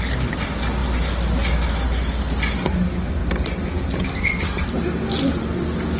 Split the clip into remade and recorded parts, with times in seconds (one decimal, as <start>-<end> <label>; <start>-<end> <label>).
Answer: 0.0-6.0 recorded